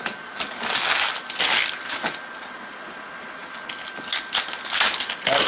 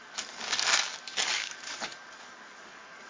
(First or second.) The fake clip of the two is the second